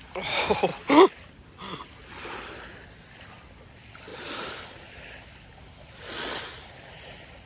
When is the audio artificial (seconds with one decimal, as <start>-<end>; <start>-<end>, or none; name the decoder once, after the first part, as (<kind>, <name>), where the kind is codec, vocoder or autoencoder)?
none